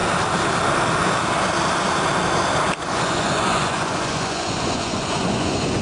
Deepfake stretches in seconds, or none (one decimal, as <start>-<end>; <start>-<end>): 2.8-5.8